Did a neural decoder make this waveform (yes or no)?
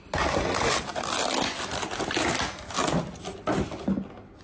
no